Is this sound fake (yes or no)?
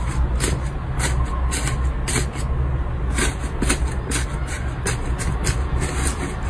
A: no